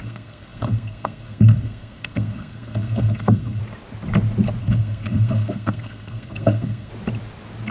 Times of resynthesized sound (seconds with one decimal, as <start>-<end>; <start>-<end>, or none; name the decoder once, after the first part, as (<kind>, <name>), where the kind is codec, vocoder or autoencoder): 0.0-3.6 (codec, SNAC); 4.6-6.9